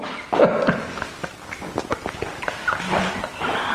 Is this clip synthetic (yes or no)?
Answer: no